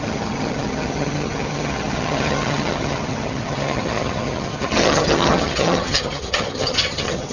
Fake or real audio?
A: fake